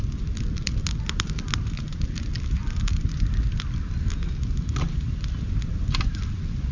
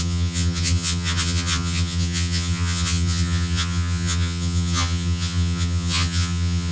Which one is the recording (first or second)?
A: first